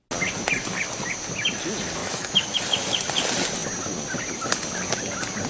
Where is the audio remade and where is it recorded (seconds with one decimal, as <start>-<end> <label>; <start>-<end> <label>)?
0.0-2.0 recorded; 2.0-2.6 remade; 2.6-5.5 recorded